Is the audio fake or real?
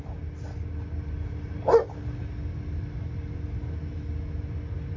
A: real